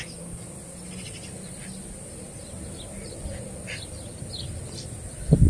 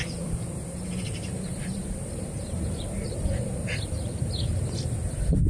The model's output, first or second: second